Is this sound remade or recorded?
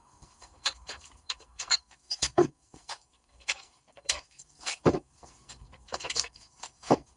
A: remade